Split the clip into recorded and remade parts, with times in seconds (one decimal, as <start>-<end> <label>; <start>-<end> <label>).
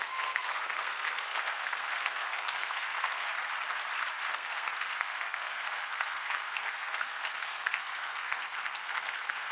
0.0-3.3 remade; 3.3-4.3 recorded; 4.3-9.5 remade